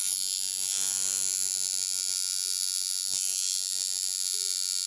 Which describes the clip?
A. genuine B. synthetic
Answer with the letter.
A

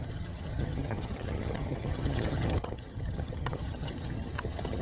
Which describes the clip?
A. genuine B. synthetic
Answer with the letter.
B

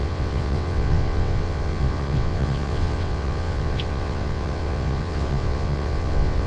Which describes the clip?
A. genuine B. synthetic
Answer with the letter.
B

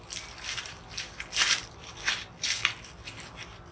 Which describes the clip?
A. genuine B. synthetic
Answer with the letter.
A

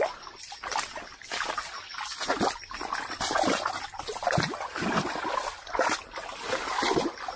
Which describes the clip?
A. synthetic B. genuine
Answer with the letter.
B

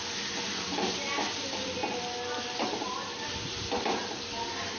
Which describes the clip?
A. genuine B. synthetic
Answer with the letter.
A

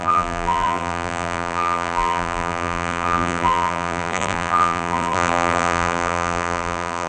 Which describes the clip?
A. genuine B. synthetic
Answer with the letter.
B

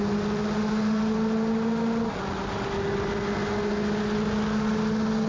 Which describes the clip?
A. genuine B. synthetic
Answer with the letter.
A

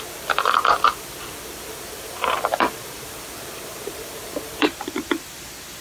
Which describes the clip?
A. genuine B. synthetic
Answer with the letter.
B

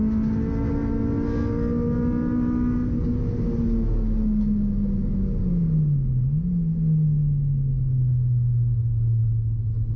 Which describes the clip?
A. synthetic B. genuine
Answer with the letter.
B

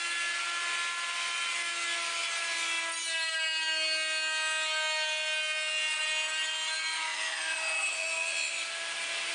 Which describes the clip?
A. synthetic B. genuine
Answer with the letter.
B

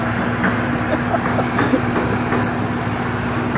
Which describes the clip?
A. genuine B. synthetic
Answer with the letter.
A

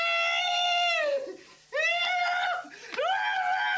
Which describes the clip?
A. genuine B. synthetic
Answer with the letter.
A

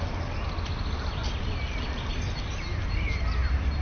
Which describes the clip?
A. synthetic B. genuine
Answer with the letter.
B